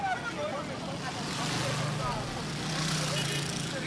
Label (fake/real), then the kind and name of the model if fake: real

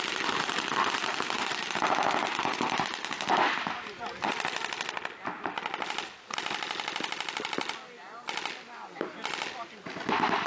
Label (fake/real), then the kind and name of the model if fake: real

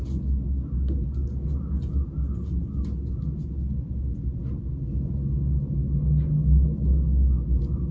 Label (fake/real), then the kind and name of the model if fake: real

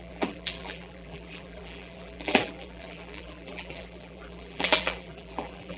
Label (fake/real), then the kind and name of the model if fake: fake, vocoder, BigVGAN v2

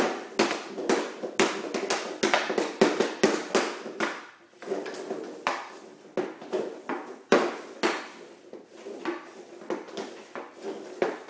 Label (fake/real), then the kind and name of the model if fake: real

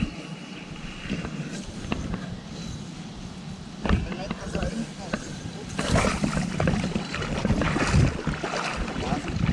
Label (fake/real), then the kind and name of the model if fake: fake, vocoder, BigVGAN v2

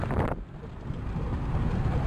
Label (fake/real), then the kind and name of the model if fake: fake, vocoder, BigVGAN v2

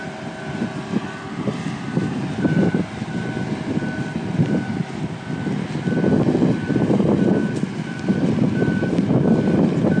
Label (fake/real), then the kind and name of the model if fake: fake, vocoder, BigVGAN v2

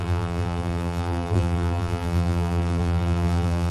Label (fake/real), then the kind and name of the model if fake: fake, vocoder, BigVGAN v2